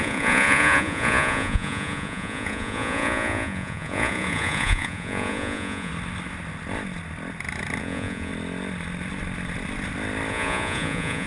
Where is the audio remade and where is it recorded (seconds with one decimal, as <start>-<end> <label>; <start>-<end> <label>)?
0.0-5.9 remade; 5.9-7.8 recorded; 7.8-8.3 remade; 8.3-10.3 recorded; 10.3-11.3 remade